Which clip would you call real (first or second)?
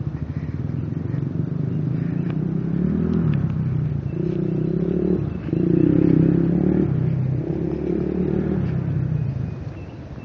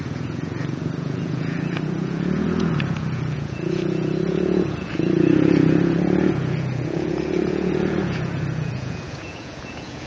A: first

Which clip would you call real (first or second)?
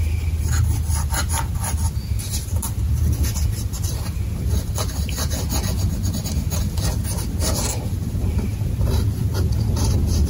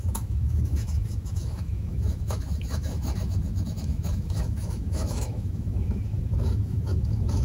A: first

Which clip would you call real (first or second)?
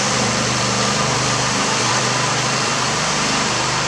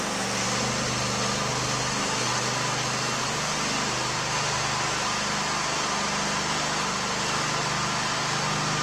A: second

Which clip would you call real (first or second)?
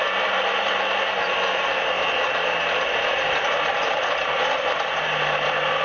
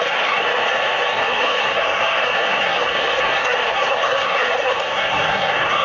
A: first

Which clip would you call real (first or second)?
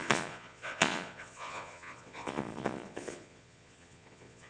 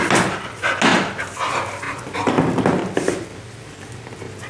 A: second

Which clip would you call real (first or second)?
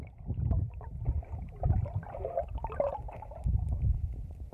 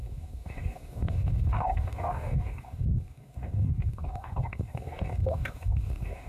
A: first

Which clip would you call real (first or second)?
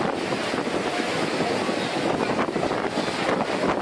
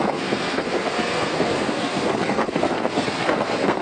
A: first